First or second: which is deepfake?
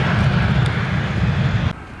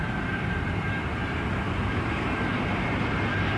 second